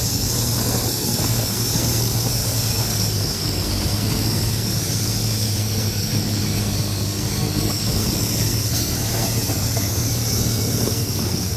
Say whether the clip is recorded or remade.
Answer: remade